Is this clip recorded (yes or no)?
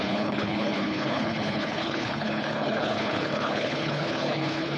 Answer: no